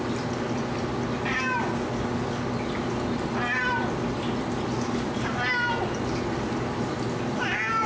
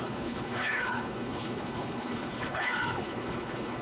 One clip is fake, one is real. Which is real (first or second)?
first